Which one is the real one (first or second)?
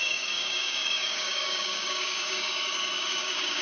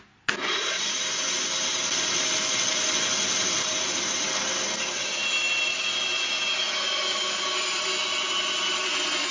second